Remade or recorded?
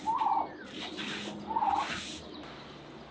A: recorded